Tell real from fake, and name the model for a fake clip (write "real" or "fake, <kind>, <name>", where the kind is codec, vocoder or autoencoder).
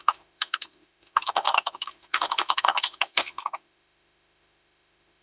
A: fake, autoencoder, DAC-VAE